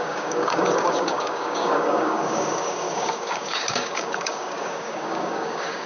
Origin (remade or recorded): remade